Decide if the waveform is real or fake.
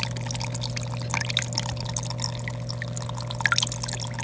real